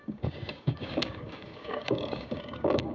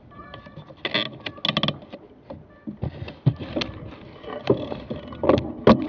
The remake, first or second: first